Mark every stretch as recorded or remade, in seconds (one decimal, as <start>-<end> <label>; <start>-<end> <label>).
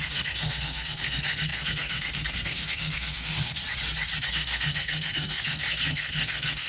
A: 0.0-3.6 remade; 3.6-4.3 recorded; 4.3-6.7 remade